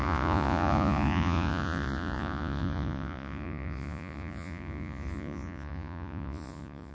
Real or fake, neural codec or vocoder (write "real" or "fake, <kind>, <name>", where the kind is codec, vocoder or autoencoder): fake, vocoder, Vocos